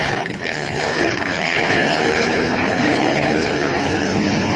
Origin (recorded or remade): remade